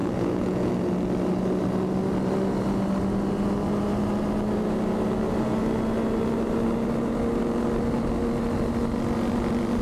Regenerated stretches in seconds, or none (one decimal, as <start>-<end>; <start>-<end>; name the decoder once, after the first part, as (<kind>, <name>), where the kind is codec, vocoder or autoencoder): 0.0-0.7 (vocoder, Vocos)